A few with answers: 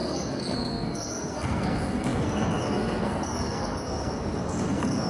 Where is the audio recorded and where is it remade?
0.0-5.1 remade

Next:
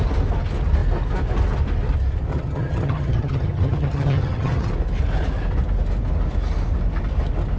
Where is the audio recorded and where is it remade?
0.0-2.3 recorded; 2.3-4.7 remade; 4.7-7.6 recorded

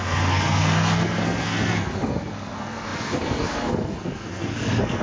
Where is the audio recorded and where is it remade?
0.0-5.0 remade

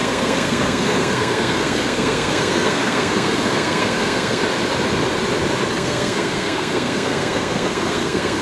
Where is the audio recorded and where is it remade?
0.0-4.4 remade; 4.4-5.7 recorded; 5.7-8.4 remade

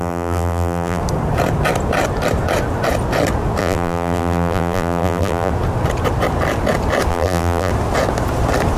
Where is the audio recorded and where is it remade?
0.0-1.0 remade; 1.0-3.6 recorded; 3.6-5.5 remade; 5.5-7.1 recorded; 7.1-7.7 remade; 7.7-8.8 recorded

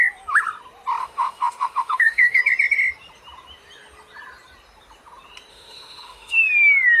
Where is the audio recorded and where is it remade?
0.0-1.0 recorded; 1.0-2.4 remade; 2.4-5.5 recorded; 5.5-6.4 remade; 6.4-7.0 recorded

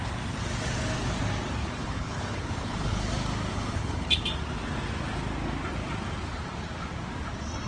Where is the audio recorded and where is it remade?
0.0-1.6 recorded; 1.6-3.1 remade; 3.1-3.5 recorded; 3.5-4.2 remade; 4.2-7.7 recorded